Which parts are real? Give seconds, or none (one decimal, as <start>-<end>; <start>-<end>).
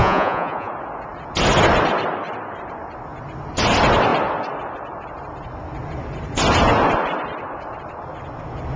0.7-8.8